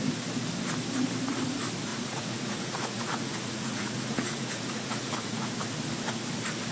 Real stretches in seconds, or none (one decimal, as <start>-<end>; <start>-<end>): 0.0-1.9; 5.5-6.7